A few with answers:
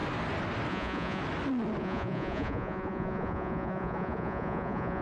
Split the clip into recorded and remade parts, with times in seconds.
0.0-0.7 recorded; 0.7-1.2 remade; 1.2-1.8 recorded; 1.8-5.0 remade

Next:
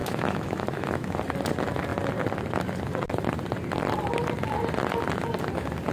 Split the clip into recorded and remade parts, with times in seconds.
0.0-1.2 remade; 1.2-5.9 recorded

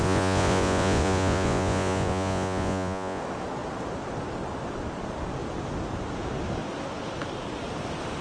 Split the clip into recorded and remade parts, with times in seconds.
0.0-3.2 remade; 3.2-8.2 recorded

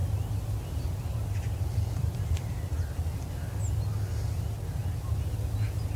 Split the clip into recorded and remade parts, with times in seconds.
0.0-3.6 remade; 3.6-6.0 recorded

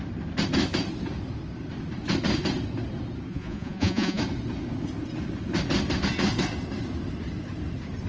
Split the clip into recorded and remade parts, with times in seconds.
0.0-3.3 recorded; 3.3-4.2 remade; 4.2-8.1 recorded

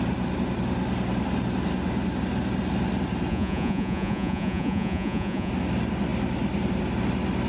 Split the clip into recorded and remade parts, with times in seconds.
0.0-3.3 recorded; 3.3-5.5 remade; 5.5-7.5 recorded